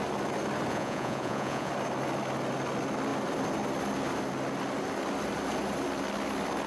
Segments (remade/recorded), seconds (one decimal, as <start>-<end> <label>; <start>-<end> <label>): 0.0-0.7 recorded; 0.7-1.7 remade; 1.7-6.7 recorded